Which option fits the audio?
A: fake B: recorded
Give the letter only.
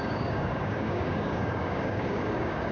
A